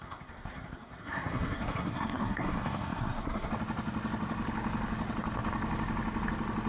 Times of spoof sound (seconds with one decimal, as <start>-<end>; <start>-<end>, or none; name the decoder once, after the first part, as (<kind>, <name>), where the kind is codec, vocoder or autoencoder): 0.0-3.5 (codec, SNAC)

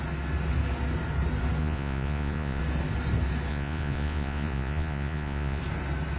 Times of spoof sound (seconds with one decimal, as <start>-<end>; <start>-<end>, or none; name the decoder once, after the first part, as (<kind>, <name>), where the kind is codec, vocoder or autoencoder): 1.6-2.6 (vocoder, Vocos); 3.5-5.6